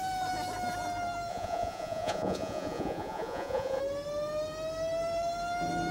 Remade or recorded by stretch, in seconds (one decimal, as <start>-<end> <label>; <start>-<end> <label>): 0.0-1.3 recorded; 1.3-3.8 remade; 3.8-5.9 recorded

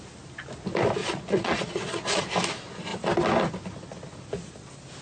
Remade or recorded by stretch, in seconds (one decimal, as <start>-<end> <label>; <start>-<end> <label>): 0.0-1.0 recorded; 1.0-2.2 remade; 2.2-5.0 recorded

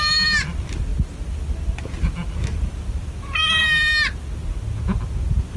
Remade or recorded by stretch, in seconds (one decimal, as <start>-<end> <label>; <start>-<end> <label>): 0.0-5.6 recorded

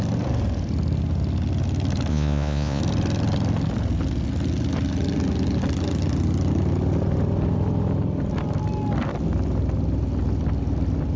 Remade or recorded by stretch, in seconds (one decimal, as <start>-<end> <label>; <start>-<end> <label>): 0.0-2.1 recorded; 2.1-2.8 remade; 2.8-11.2 recorded